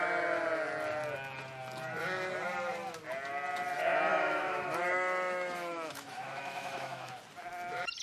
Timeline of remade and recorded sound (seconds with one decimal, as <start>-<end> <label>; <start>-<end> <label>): 0.0-4.1 recorded; 4.1-7.1 remade; 7.1-8.0 recorded